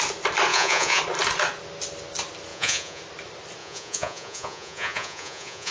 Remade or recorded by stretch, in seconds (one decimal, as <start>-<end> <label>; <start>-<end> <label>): 0.0-0.5 recorded; 0.5-1.0 remade; 1.0-2.5 recorded; 2.5-3.0 remade; 3.0-3.6 recorded; 3.6-5.7 remade